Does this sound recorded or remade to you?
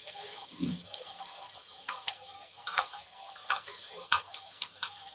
remade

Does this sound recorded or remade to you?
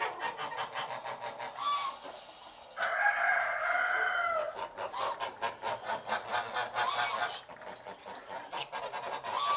recorded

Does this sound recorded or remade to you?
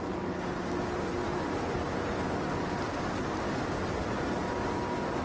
recorded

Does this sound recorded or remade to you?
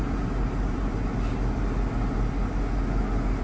recorded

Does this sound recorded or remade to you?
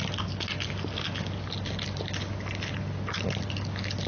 recorded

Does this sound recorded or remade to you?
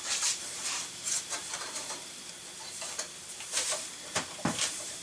remade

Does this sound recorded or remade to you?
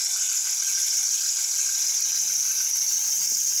recorded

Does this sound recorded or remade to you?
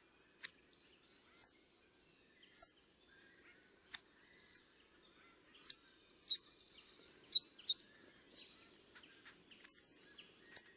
recorded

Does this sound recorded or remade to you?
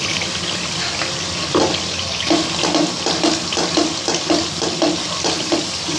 recorded